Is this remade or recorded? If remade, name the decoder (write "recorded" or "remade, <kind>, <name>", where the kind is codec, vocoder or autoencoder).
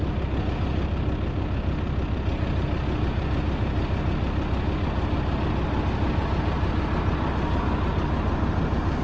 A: recorded